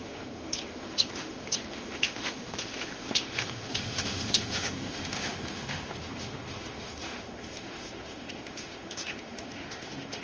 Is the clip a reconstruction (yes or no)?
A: yes